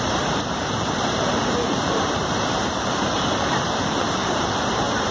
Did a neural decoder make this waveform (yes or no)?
yes